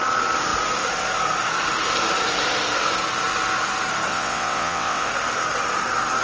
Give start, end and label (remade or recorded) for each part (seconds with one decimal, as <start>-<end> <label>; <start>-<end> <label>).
0.0-4.1 recorded; 4.1-5.1 remade; 5.1-6.2 recorded